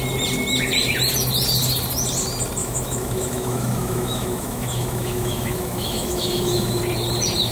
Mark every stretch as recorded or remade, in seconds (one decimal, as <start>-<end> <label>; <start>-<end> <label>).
0.0-2.6 recorded; 2.6-6.8 remade; 6.8-7.5 recorded